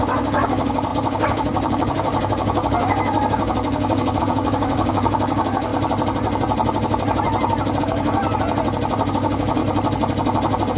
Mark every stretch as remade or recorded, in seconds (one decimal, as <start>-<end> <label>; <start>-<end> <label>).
0.0-5.7 remade; 5.7-7.8 recorded; 7.8-8.2 remade; 8.2-9.1 recorded; 9.1-9.6 remade; 9.6-10.8 recorded